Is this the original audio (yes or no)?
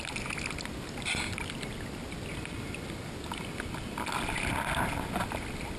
yes